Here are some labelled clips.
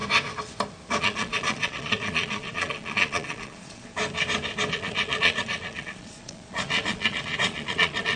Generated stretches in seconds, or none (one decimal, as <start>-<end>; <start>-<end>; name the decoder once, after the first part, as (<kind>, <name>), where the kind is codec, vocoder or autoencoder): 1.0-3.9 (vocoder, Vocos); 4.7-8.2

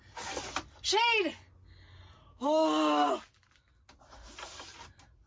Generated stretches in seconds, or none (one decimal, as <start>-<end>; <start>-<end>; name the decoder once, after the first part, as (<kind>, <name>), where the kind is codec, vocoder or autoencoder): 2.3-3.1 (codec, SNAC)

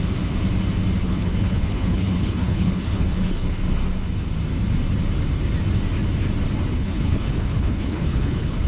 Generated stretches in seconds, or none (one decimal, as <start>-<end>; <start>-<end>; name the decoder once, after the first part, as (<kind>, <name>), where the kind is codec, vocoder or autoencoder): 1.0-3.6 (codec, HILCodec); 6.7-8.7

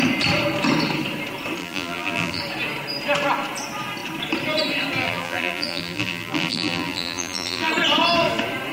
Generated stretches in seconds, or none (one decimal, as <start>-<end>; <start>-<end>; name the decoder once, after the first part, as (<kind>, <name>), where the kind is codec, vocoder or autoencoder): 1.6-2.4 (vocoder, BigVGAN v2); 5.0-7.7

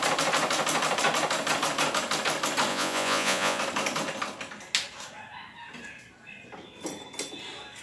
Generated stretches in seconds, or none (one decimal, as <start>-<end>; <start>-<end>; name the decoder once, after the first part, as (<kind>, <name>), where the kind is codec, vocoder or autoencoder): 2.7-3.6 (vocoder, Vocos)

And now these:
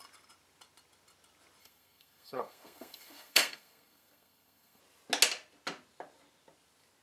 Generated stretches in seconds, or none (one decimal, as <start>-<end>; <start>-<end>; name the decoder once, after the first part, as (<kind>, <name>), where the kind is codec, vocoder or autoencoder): 1.6-4.8 (codec, SNAC)

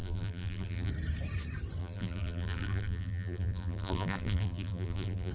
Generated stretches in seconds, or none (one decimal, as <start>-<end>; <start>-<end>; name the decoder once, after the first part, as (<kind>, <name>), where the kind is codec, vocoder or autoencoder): 0.0-0.9 (vocoder, BigVGAN v2); 1.8-5.3

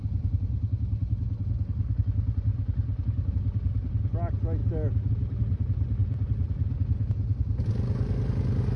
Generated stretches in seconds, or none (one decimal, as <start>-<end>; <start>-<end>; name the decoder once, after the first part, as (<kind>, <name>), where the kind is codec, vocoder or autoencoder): none